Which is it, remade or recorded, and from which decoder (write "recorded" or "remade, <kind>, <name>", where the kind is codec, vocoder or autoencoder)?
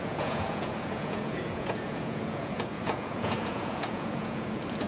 remade, vocoder, Vocos